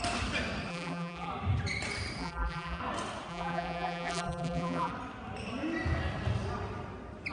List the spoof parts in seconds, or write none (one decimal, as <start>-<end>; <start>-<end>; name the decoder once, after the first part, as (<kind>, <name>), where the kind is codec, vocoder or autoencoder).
0.7-1.3 (vocoder, BigVGAN v2); 2.2-2.8; 3.3-4.9